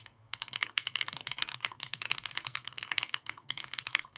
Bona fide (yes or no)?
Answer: no